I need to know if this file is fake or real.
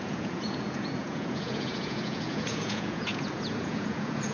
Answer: fake